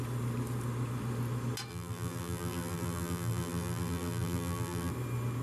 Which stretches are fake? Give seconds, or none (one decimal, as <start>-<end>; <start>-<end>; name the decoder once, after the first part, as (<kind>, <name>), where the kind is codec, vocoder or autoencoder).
1.7-4.9 (vocoder, BigVGAN v2)